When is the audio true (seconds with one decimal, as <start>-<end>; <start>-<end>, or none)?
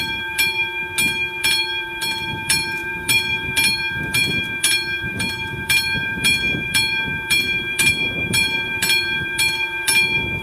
0.8-1.4